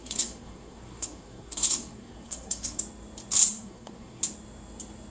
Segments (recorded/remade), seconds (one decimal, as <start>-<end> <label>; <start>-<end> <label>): 0.0-2.8 remade; 2.8-3.5 recorded; 3.5-4.2 remade; 4.2-5.1 recorded